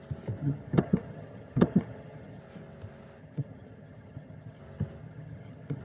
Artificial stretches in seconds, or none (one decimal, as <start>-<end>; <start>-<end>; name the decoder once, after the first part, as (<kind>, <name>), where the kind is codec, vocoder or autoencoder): 0.4-2.4 (vocoder, HiFi-GAN); 3.2-4.6; 5.0-5.8